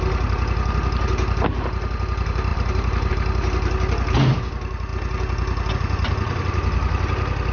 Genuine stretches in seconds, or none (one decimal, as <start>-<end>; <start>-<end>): 0.0-2.5; 3.1-7.5